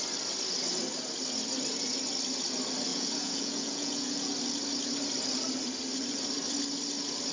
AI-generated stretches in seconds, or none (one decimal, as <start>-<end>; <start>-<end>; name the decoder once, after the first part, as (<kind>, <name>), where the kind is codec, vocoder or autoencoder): 2.9-4.3 (vocoder, Vocos)